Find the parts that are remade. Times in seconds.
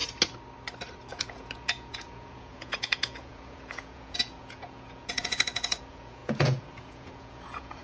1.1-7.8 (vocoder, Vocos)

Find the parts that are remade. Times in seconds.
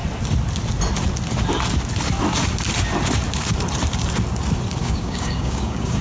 4.8-6.0 (codec, DAC)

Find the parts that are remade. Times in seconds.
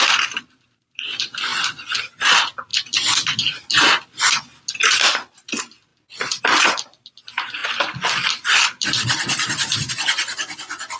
0.0-1.5 (vocoder, BigVGAN v2); 2.2-2.7; 5.0-5.9; 6.4-11.0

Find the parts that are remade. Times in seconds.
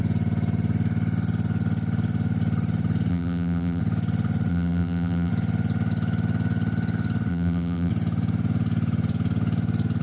3.1-3.8 (vocoder, BigVGAN v2); 4.5-5.3; 7.3-7.9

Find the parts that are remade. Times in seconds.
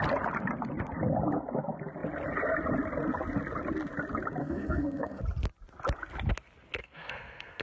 4.4-5.2 (codec, SNAC); 6.8-7.6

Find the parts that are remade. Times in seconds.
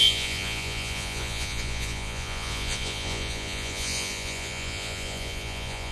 0.0-5.9 (vocoder, Vocos)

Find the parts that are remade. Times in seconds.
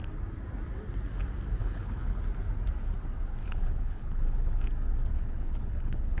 1.6-2.2 (codec, HILCodec); 3.4-4.6; 5.1-6.2